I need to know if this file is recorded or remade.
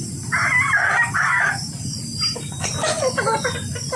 recorded